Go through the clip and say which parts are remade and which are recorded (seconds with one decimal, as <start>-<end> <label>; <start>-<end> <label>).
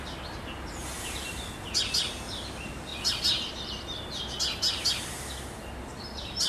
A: 0.0-6.5 recorded